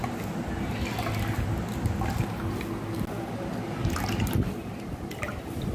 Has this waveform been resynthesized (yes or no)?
no